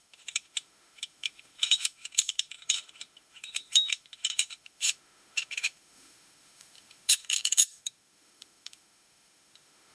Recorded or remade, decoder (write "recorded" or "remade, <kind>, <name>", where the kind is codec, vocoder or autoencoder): remade, autoencoder, DAC-VAE